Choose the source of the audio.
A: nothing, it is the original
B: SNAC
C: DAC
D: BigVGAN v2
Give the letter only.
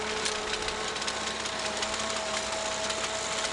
A